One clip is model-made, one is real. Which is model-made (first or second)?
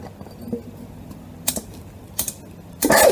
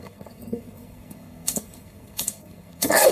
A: second